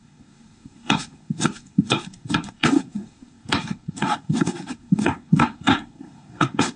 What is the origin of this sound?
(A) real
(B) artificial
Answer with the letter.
B